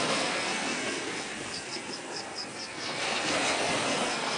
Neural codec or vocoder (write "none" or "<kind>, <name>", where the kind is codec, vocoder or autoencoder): codec, SNAC